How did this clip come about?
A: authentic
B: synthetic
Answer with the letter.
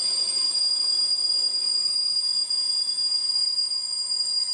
B